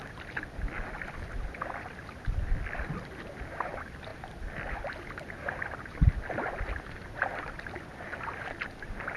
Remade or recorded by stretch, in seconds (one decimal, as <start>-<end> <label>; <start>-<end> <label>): 0.0-9.2 recorded